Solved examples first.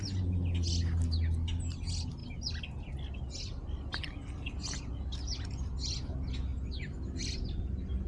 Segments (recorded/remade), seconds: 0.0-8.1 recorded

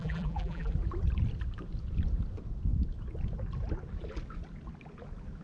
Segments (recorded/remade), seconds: 0.0-0.7 remade; 0.7-5.4 recorded

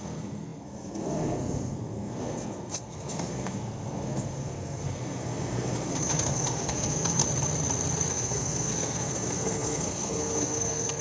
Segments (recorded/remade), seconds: 0.0-7.2 remade; 7.2-8.1 recorded; 8.1-11.0 remade

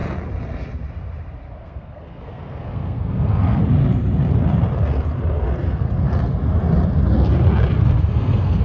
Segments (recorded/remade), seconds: 0.0-1.6 recorded; 1.6-3.6 remade; 3.6-8.1 recorded; 8.1-8.6 remade

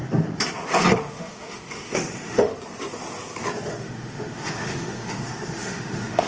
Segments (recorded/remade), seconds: 0.0-1.0 recorded; 1.0-2.5 remade; 2.5-3.7 recorded; 3.7-6.3 remade